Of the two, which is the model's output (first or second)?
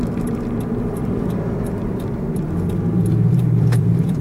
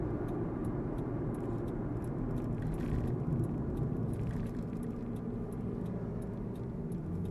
first